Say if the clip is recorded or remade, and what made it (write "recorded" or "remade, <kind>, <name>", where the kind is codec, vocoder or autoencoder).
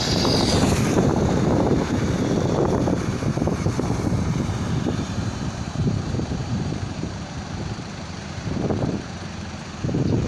remade, vocoder, BigVGAN v2